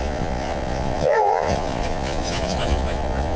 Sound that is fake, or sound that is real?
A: fake